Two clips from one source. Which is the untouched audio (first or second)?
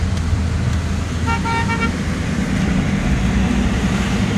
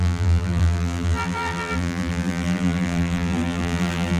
first